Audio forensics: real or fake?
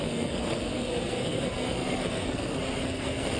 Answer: fake